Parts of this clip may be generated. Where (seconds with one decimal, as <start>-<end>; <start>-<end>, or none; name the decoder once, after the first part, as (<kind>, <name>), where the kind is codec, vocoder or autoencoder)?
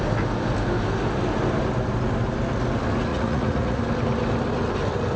3.1-3.8 (vocoder, Vocos)